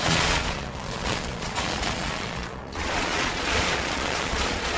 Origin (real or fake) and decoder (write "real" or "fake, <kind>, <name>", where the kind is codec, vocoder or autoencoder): fake, vocoder, Vocos